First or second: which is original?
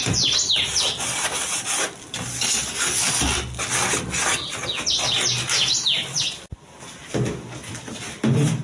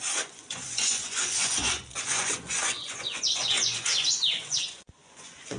first